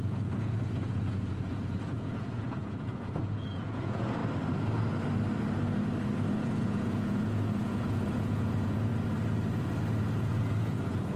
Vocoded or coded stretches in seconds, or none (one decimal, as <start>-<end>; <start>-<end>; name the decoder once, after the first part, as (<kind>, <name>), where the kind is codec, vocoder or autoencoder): 0.0-4.2 (vocoder, Vocos); 6.3-8.9; 10.2-11.2